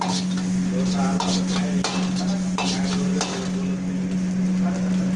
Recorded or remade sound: recorded